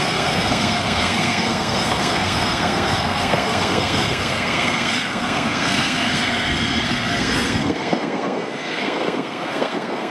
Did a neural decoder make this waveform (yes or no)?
yes